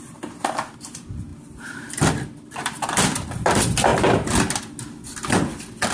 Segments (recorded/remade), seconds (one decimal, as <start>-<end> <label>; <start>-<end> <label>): 0.0-3.9 remade; 3.9-4.6 recorded; 4.6-5.9 remade